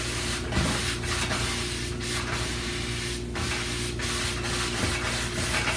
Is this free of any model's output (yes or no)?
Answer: yes